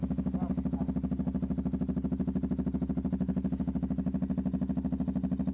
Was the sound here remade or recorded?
recorded